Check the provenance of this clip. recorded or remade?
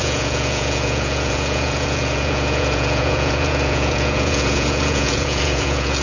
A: remade